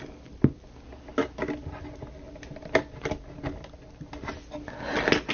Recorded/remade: recorded